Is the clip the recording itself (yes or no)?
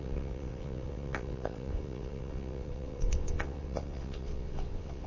no